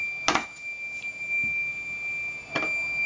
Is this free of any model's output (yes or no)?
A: yes